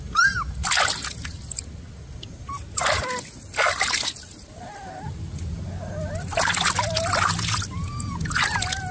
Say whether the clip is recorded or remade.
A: recorded